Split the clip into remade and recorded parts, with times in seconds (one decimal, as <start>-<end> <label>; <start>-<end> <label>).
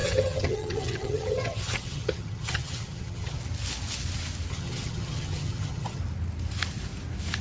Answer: 0.0-3.4 remade; 3.4-4.5 recorded; 4.5-6.0 remade; 6.0-7.4 recorded